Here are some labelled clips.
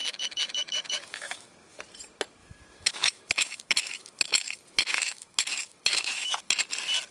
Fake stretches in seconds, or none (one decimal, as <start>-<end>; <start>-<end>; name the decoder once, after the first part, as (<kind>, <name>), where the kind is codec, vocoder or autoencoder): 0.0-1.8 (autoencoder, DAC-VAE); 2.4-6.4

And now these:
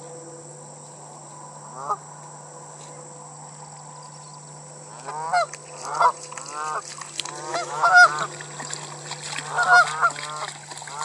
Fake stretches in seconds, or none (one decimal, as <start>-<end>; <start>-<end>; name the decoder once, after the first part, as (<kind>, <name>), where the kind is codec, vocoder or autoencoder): 7.5-8.1 (autoencoder, DAC-VAE)

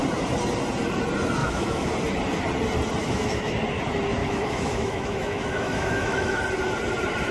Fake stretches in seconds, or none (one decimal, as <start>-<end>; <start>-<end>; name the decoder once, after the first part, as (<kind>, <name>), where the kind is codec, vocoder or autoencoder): 1.4-1.9 (autoencoder, DAC-VAE); 3.0-3.6; 4.2-6.4